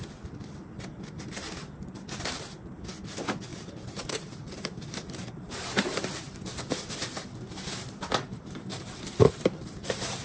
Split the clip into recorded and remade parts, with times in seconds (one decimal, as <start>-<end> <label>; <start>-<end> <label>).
0.0-3.5 recorded; 3.5-6.4 remade; 6.4-8.3 recorded; 8.3-10.2 remade